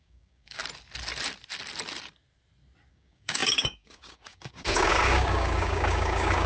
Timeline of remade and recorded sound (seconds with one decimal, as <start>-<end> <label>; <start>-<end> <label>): 0.0-0.6 remade; 0.6-2.9 recorded; 2.9-6.5 remade